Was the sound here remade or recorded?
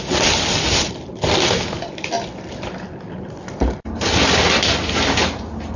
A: recorded